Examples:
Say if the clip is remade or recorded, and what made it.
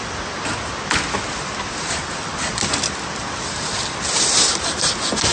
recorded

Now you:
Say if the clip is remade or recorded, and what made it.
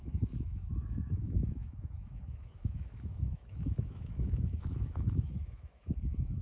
remade, autoencoder, DAC-VAE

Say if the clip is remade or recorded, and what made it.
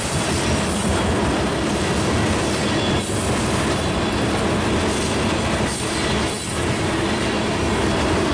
recorded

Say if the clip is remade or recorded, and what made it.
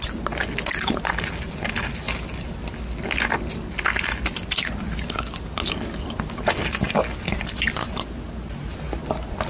recorded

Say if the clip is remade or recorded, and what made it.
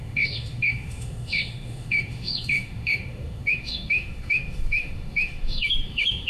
remade, autoencoder, DAC-VAE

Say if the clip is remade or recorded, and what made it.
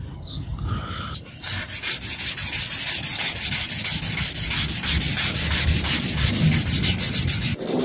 recorded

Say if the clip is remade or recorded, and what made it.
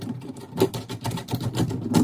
recorded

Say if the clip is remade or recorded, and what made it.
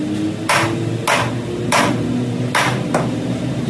recorded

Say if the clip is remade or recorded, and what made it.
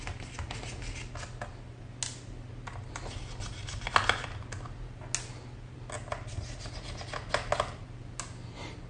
recorded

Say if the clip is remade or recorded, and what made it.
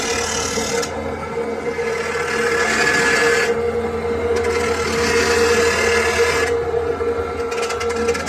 recorded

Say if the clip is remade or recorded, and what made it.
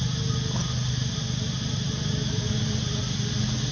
recorded